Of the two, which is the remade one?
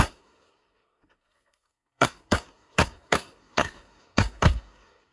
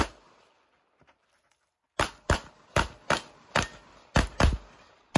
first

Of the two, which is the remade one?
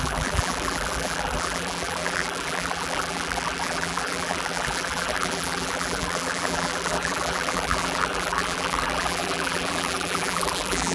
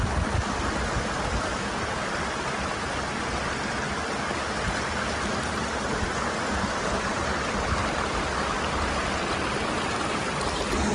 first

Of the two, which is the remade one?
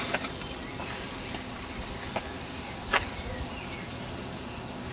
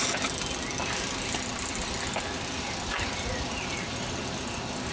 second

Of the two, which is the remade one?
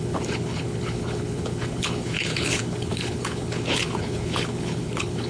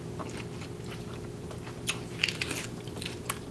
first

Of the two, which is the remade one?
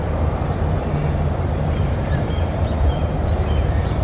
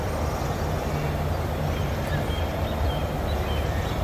first